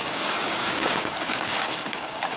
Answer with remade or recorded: remade